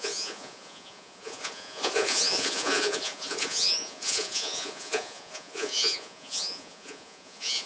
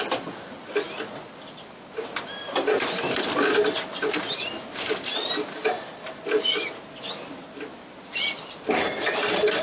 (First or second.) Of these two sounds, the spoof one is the first